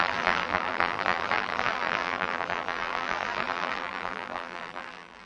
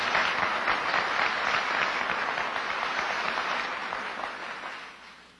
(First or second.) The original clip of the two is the second